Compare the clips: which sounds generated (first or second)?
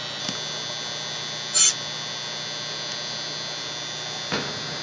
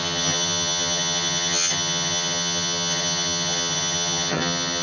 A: second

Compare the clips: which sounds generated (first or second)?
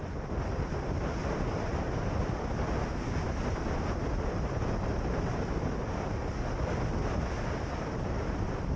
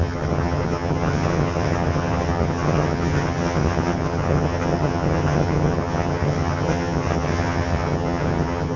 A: second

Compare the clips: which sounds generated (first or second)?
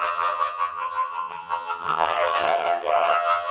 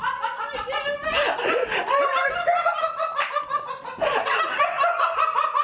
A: first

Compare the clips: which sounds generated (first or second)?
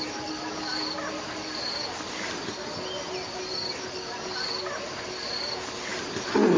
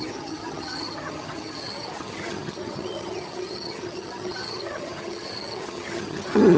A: second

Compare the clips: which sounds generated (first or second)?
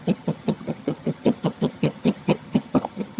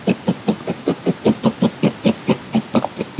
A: first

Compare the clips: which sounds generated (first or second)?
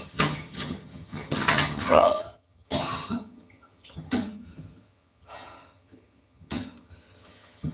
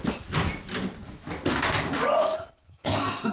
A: first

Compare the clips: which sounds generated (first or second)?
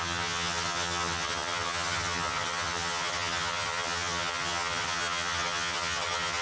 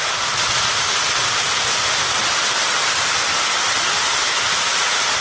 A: first